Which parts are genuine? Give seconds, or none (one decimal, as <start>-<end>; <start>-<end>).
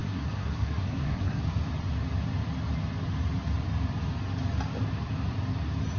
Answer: 1.4-6.0